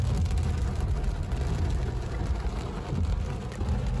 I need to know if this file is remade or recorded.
recorded